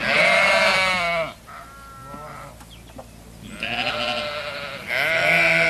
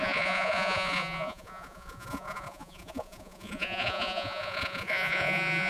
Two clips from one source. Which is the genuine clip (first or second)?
first